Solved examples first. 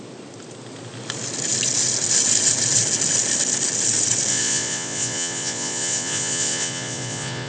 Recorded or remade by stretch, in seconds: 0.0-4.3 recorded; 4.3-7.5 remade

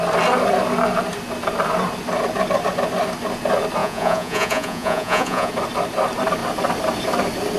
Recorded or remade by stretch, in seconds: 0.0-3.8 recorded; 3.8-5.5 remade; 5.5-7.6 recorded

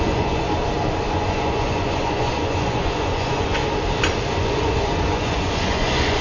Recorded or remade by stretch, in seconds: 0.0-0.5 remade; 0.5-1.1 recorded; 1.1-3.6 remade; 3.6-4.4 recorded; 4.4-6.2 remade